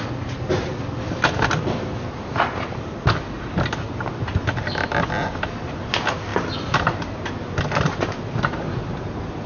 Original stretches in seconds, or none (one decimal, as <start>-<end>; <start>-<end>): 0.0-9.5